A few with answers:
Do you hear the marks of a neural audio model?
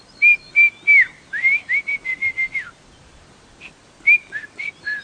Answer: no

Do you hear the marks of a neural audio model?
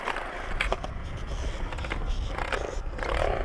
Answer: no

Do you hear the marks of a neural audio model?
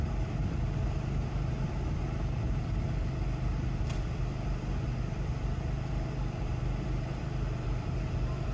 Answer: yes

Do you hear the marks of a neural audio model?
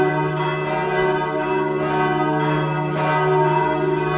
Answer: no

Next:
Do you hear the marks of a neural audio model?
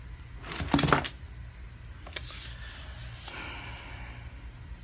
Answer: no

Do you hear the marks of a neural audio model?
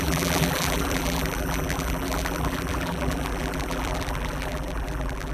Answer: yes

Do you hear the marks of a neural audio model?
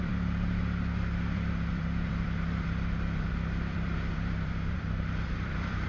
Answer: yes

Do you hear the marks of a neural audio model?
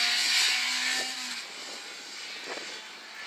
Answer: no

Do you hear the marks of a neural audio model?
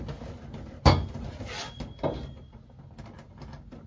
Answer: no